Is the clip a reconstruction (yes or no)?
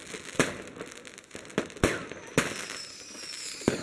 no